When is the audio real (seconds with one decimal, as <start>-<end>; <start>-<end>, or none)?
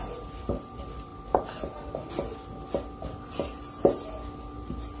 0.0-5.0